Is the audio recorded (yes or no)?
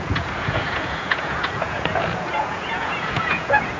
no